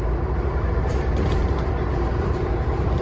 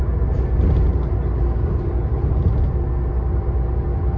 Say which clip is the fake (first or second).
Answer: first